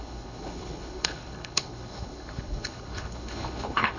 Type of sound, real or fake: fake